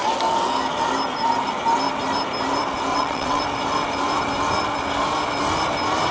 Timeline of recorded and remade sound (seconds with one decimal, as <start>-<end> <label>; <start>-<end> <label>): 0.0-2.9 recorded; 2.9-3.4 remade; 3.4-6.1 recorded